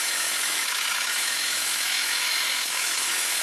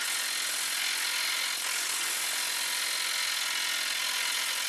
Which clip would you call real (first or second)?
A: second